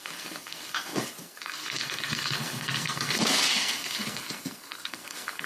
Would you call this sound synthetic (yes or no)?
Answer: yes